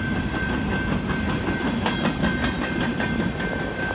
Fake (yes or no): no